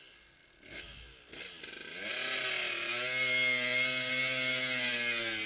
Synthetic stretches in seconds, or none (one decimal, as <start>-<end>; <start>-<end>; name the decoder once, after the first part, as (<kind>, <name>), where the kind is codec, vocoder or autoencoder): none